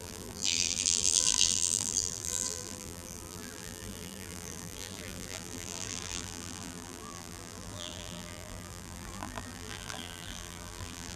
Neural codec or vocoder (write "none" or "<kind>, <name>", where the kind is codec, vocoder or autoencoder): vocoder, BigVGAN v2